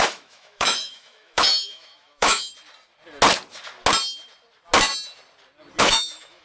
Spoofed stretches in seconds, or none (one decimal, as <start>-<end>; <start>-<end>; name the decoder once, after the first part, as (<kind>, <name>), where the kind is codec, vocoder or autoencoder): 0.0-2.5 (autoencoder, DAC-VAE); 5.8-6.4